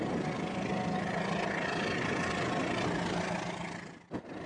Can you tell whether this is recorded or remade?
recorded